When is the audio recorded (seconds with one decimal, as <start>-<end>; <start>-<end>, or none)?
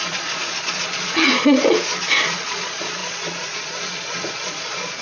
none